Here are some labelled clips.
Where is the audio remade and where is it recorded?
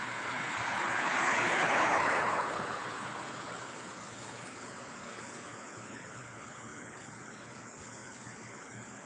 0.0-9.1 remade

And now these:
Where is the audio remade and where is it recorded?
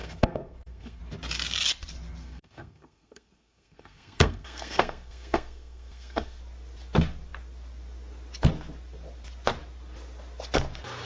0.0-1.0 remade; 1.0-2.2 recorded; 2.2-6.4 remade; 6.4-11.1 recorded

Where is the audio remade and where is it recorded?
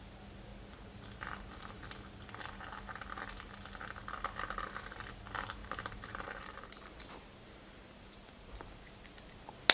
0.0-0.5 recorded; 0.5-1.7 remade; 1.7-5.6 recorded; 5.6-8.8 remade; 8.8-9.7 recorded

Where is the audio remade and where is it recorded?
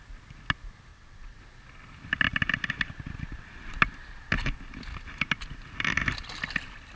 0.0-0.9 recorded; 0.9-1.4 remade; 1.4-7.0 recorded